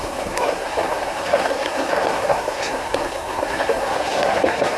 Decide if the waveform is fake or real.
fake